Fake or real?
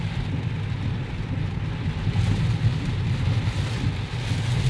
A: real